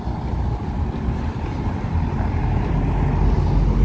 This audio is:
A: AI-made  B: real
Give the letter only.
B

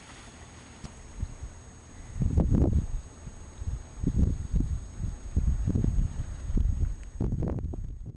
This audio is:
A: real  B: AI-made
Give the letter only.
A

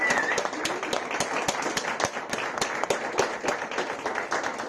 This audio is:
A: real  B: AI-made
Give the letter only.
A